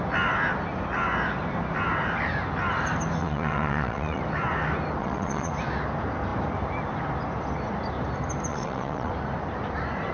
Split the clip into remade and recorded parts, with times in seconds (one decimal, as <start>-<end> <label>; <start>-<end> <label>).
0.0-3.2 recorded; 3.2-4.2 remade; 4.2-5.0 recorded; 5.0-5.5 remade; 5.5-8.5 recorded; 8.5-9.1 remade; 9.1-10.1 recorded